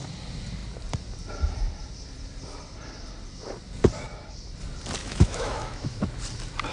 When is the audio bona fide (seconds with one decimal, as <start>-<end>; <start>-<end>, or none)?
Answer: 0.0-5.0; 6.0-6.7